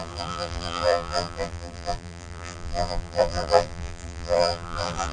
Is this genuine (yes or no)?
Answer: no